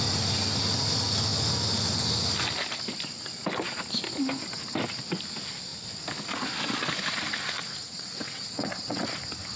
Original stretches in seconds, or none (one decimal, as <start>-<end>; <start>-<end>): 0.0-7.8; 9.1-9.6